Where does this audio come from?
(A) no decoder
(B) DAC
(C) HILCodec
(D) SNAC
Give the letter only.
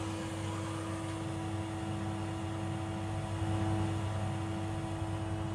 A